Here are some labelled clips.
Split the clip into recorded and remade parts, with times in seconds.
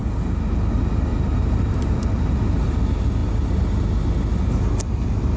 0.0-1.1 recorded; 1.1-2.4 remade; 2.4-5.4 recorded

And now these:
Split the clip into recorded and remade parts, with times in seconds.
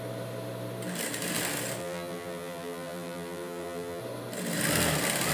0.0-1.8 recorded; 1.8-4.0 remade; 4.0-5.3 recorded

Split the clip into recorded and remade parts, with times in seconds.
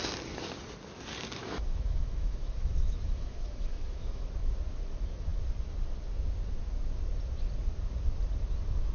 0.0-1.4 recorded; 1.4-4.2 remade; 4.2-8.9 recorded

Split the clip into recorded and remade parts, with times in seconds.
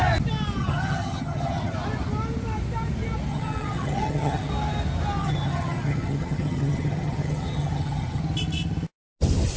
0.0-0.6 recorded; 0.6-1.7 remade; 1.7-3.3 recorded; 3.3-4.5 remade; 4.5-5.2 recorded; 5.2-8.2 remade; 8.2-9.6 recorded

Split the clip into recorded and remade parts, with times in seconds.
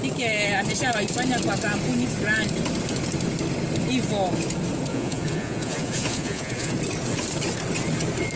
0.0-4.9 recorded; 4.9-6.7 remade; 6.7-8.4 recorded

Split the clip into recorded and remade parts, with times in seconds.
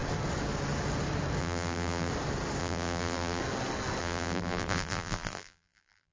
0.0-1.4 recorded; 1.4-2.1 remade; 2.1-2.6 recorded; 2.6-3.4 remade; 3.4-4.0 recorded; 4.0-6.1 remade